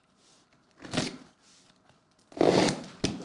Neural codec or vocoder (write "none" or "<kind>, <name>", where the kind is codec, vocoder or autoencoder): none